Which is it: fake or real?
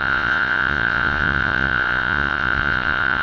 fake